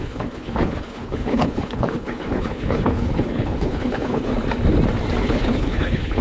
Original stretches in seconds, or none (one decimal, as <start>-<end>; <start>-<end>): 4.3-5.2